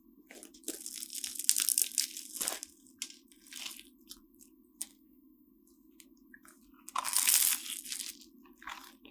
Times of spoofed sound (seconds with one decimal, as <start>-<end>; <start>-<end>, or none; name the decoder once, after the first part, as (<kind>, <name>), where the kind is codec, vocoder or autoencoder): 4.9-5.5 (codec, SNAC)